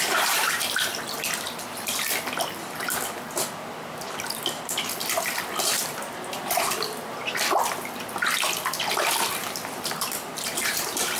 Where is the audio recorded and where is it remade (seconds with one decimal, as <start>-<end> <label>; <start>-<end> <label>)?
0.0-0.9 remade; 0.9-5.6 recorded; 5.6-7.2 remade; 7.2-10.0 recorded; 10.0-11.2 remade